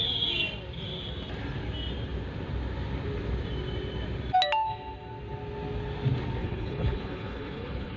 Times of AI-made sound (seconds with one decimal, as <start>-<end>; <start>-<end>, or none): 6.4-8.0